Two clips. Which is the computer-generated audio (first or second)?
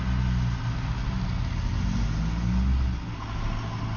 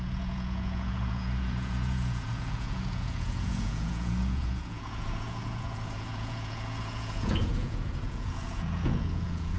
second